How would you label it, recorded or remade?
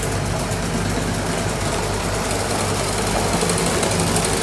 recorded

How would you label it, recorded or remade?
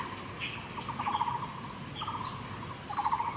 recorded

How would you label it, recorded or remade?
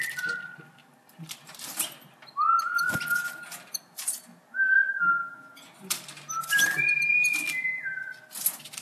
recorded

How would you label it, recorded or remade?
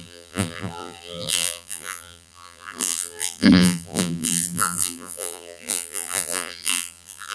remade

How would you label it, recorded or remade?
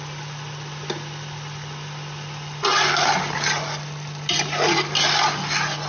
recorded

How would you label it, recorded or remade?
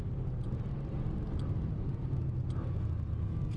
recorded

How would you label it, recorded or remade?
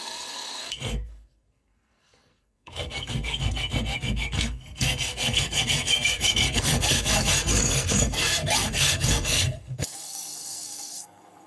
remade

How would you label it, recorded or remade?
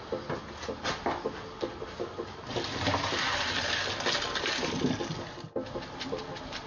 recorded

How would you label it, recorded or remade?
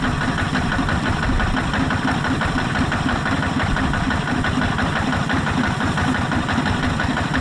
recorded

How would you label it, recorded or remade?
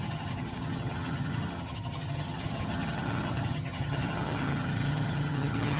remade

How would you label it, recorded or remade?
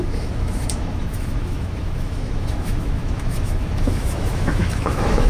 remade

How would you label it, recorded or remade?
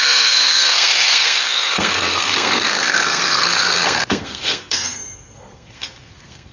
remade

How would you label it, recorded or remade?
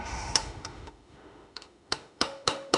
remade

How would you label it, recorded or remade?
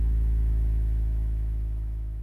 remade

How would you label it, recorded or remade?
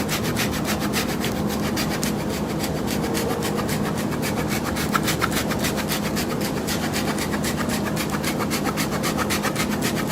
recorded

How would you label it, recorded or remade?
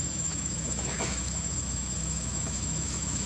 remade